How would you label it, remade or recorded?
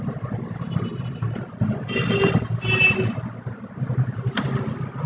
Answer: recorded